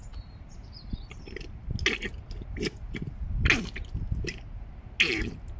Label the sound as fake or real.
real